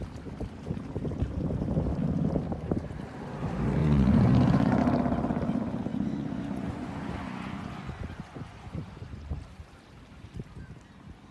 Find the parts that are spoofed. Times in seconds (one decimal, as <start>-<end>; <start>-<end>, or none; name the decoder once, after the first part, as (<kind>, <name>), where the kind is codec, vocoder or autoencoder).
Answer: 3.8-4.8 (vocoder, Vocos); 5.9-9.4